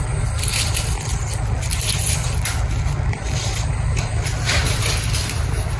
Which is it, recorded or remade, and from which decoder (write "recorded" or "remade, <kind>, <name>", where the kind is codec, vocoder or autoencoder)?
recorded